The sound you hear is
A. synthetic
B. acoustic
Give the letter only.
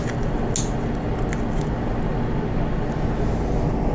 B